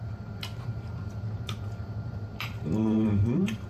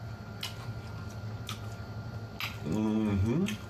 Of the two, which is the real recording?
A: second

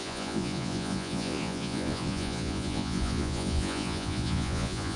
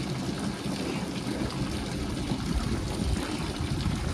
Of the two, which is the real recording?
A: second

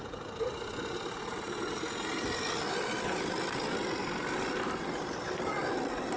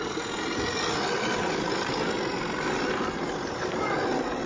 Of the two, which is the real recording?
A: second